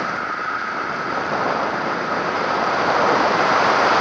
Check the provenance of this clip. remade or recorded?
remade